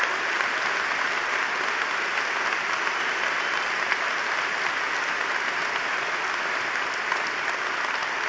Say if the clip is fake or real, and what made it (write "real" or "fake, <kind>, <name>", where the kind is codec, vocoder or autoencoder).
real